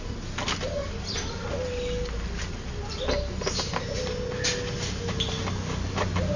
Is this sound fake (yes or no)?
no